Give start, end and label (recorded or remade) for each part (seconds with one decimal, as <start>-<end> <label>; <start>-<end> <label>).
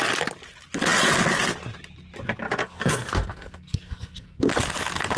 0.0-2.6 recorded; 2.6-4.5 remade; 4.5-5.2 recorded